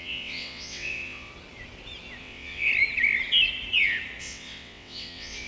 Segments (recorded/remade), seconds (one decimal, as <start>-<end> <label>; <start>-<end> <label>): 0.0-1.3 remade; 1.3-2.2 recorded; 2.2-2.7 remade; 2.7-4.2 recorded; 4.2-5.5 remade